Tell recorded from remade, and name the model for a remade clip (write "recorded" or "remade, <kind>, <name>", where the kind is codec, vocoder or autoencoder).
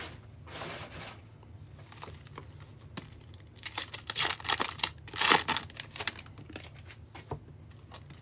recorded